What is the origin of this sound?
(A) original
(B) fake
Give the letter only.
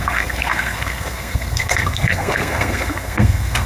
B